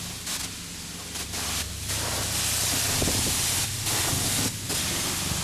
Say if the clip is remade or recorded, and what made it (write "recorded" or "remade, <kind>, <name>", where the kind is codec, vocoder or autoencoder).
recorded